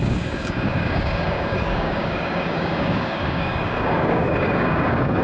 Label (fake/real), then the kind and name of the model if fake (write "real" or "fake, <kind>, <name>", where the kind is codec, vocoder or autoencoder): fake, codec, DAC